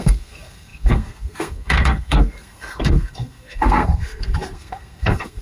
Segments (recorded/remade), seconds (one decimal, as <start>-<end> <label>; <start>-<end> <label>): 0.0-5.4 remade